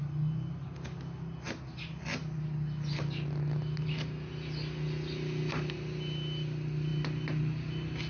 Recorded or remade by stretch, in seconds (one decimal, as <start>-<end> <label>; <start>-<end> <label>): 0.0-8.1 recorded